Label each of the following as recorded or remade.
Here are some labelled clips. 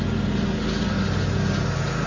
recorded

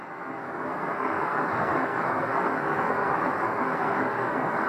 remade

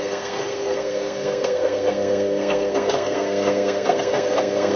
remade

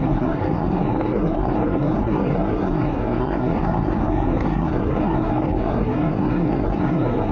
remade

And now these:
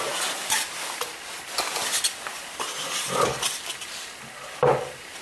recorded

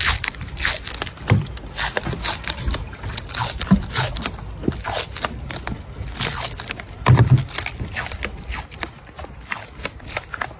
recorded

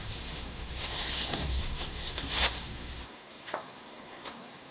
remade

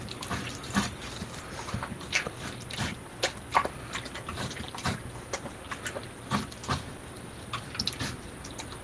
recorded